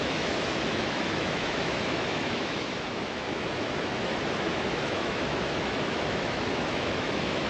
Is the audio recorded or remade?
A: remade